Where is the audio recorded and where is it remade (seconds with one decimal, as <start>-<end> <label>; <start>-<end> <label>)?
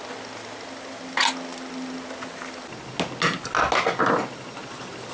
0.0-5.1 recorded